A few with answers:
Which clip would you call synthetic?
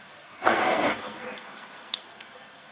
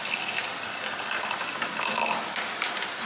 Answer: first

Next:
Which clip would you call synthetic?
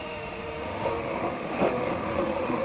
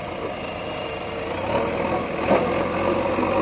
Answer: first